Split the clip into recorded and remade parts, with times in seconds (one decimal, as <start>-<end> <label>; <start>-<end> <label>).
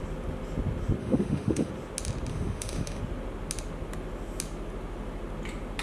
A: 0.0-1.0 recorded; 1.0-1.7 remade; 1.7-2.3 recorded; 2.3-3.0 remade; 3.0-5.8 recorded